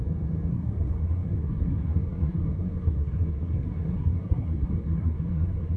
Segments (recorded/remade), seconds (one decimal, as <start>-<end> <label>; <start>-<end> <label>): 0.0-0.5 recorded; 0.5-5.8 remade